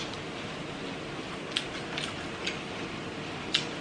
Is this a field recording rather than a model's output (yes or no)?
yes